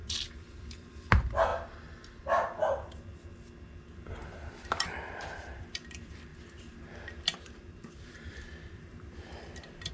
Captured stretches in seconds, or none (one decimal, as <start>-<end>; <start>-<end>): 1.5-4.1